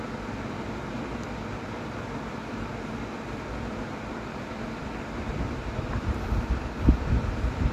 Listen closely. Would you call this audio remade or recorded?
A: remade